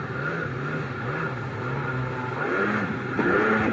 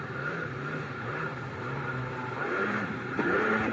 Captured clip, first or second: first